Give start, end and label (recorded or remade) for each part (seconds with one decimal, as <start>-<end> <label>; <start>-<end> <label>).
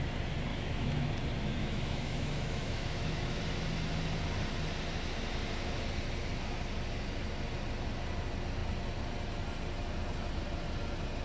0.0-0.5 recorded; 0.5-1.1 remade; 1.1-1.6 recorded; 1.6-3.4 remade; 3.4-11.2 recorded